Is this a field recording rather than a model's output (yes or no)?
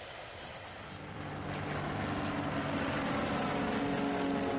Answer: yes